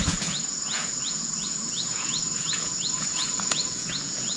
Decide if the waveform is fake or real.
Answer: fake